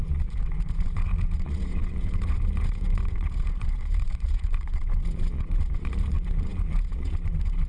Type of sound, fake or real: fake